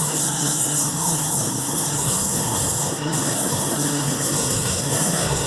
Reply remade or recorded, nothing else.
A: remade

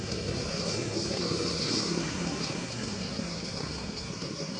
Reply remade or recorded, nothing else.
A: remade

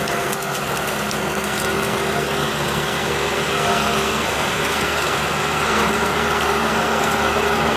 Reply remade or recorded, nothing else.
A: remade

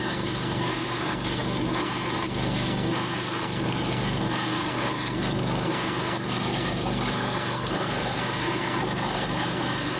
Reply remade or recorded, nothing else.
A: remade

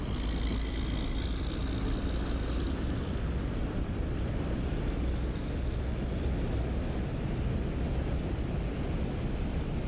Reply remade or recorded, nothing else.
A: recorded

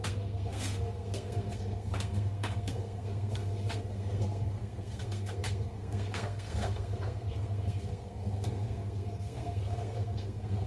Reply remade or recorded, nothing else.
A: remade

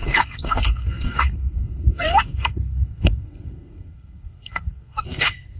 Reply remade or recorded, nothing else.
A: remade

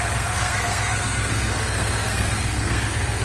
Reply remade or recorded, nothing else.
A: remade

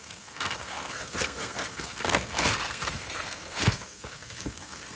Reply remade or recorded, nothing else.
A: remade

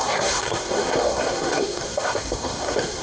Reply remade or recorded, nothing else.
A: remade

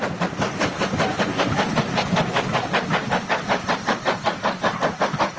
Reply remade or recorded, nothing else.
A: recorded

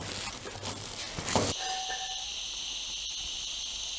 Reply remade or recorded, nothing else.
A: recorded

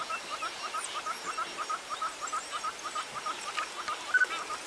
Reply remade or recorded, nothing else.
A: recorded